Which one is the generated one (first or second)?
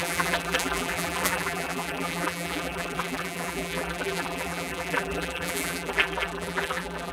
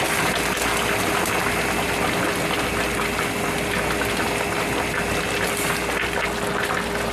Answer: first